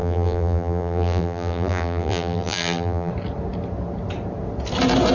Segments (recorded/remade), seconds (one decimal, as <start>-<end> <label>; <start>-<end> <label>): 0.0-3.1 remade; 3.1-5.1 recorded